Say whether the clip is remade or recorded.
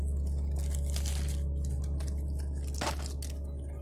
recorded